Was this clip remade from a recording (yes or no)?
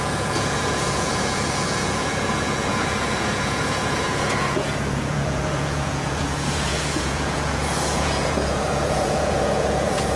yes